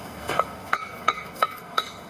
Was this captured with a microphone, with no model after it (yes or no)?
no